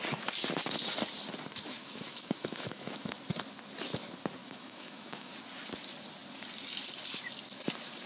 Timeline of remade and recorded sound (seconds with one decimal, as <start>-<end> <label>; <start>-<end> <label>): 0.0-1.8 recorded; 1.8-3.1 remade; 3.1-4.4 recorded; 4.4-5.3 remade; 5.3-8.1 recorded